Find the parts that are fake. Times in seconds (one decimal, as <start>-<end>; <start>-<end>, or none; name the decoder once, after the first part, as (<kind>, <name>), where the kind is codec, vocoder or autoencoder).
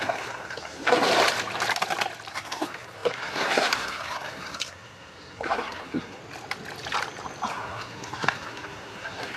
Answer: 0.0-1.1 (codec, SNAC); 2.3-6.2; 7.5-9.4